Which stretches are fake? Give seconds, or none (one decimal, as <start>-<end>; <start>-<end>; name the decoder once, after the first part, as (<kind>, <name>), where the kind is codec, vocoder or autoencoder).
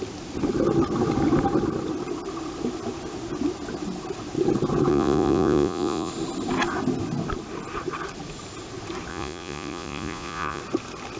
4.9-6.1 (vocoder, Vocos); 9.1-10.6